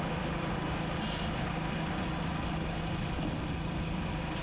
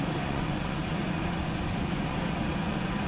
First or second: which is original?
first